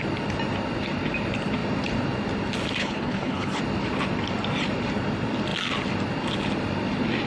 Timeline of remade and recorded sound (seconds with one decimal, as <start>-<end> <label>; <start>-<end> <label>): 0.0-2.8 recorded; 2.8-3.6 remade; 3.6-7.3 recorded